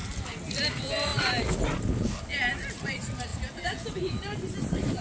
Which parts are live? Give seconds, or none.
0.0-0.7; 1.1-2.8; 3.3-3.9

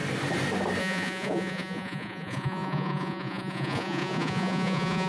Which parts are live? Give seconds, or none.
0.0-0.8

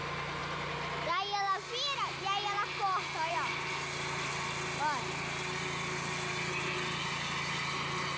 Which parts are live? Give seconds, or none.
0.0-8.2

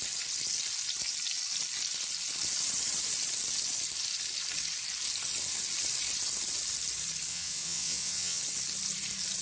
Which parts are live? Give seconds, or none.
0.0-7.3; 8.4-9.4

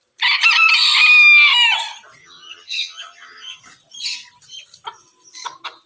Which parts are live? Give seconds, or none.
0.0-2.2; 3.6-5.9

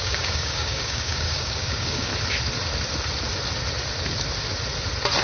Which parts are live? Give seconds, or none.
2.1-5.2

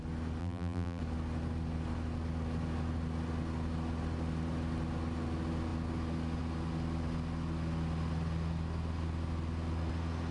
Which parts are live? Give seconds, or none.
0.0-0.4; 1.0-10.3

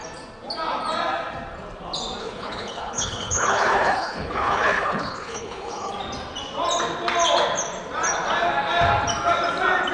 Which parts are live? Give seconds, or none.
0.0-2.2; 5.9-9.9